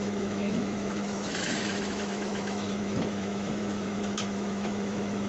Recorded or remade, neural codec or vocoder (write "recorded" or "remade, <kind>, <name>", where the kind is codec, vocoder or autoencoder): remade, autoencoder, DAC-VAE